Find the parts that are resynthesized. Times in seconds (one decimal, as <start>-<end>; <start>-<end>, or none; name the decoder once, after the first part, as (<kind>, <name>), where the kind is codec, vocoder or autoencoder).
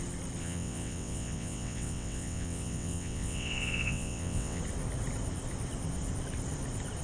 0.4-4.6 (vocoder, WaveNeXt)